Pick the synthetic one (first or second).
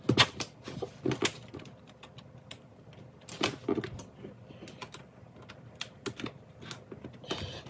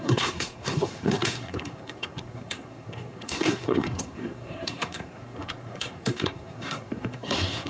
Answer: second